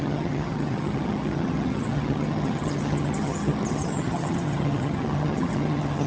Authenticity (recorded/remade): remade